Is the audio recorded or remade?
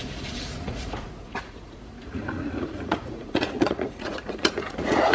remade